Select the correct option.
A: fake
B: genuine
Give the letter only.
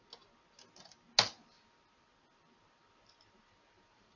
B